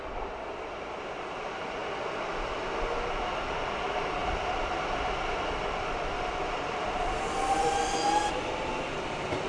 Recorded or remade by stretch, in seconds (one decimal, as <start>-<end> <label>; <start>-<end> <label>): 0.0-4.2 recorded; 4.2-8.7 remade; 8.7-9.5 recorded